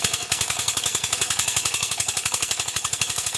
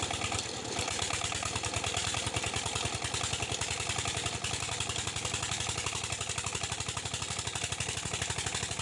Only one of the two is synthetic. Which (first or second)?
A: first